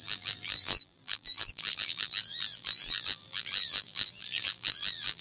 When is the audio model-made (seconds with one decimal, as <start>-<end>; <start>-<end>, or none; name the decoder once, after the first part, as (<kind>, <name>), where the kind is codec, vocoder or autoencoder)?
0.0-5.2 (vocoder, BigVGAN v2)